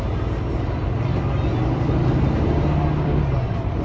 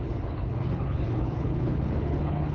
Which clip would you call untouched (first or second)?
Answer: first